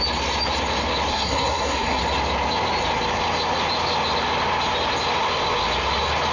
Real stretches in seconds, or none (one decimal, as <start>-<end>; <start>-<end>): 0.0-1.1; 2.0-6.3